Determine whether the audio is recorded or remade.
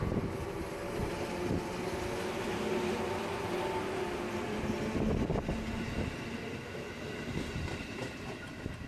recorded